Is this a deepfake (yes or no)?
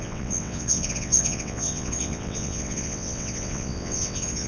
yes